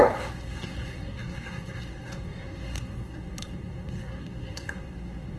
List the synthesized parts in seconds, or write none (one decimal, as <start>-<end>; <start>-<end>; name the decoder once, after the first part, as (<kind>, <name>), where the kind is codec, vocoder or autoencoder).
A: 0.0-5.4 (codec, SNAC)